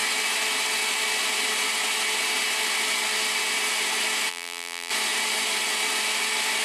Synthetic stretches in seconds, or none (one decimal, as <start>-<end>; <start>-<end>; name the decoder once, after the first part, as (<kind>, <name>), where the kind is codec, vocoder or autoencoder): 4.3-4.9 (vocoder, BigVGAN v2)